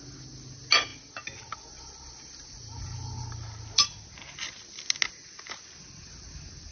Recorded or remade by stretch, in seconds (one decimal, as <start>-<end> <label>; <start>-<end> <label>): 0.0-6.7 recorded